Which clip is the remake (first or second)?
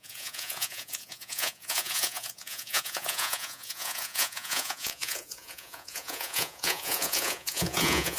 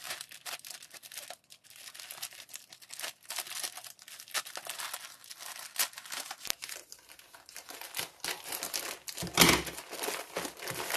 first